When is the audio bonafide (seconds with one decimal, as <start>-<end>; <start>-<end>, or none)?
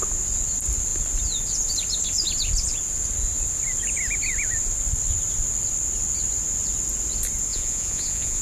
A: 0.0-7.5